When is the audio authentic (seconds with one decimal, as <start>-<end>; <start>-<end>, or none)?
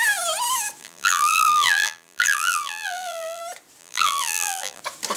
0.0-0.8; 3.4-3.8; 4.8-5.2